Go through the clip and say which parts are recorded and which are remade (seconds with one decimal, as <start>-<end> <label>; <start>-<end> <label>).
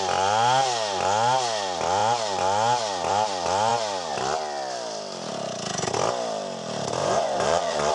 0.0-7.0 recorded; 7.0-7.9 remade